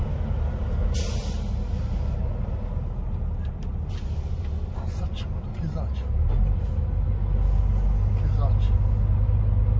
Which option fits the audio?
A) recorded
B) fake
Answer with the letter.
A